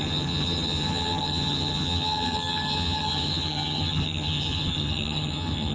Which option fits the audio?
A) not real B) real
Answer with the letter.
A